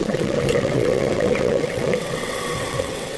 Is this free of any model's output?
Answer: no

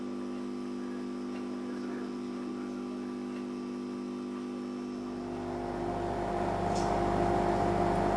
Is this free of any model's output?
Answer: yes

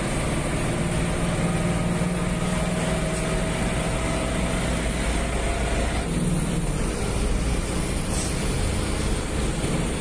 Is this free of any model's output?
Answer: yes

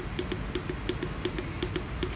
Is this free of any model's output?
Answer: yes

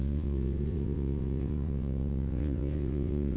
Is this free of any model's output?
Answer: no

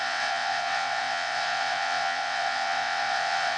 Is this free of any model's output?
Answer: no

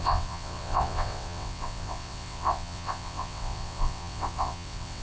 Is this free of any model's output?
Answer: no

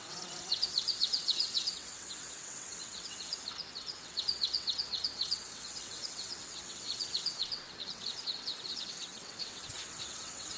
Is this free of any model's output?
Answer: no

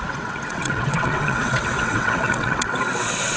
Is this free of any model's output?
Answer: no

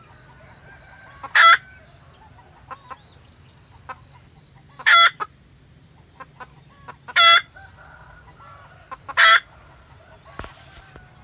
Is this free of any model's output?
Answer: yes